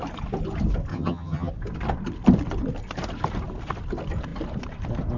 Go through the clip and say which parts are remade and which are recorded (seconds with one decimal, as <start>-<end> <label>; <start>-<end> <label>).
0.0-0.9 recorded; 0.9-1.5 remade; 1.5-5.2 recorded